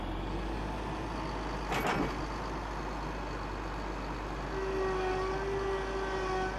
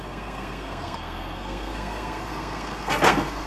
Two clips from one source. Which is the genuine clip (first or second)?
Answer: first